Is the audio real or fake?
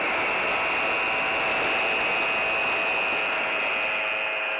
real